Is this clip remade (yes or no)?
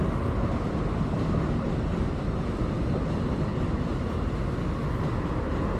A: no